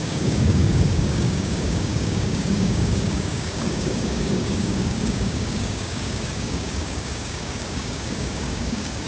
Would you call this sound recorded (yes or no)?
no